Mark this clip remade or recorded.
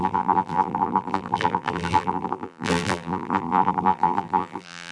remade